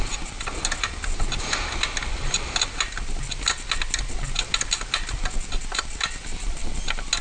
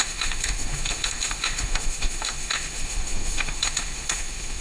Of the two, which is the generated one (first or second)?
second